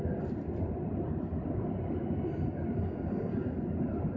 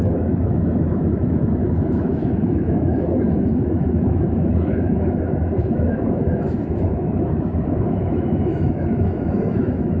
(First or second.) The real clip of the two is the first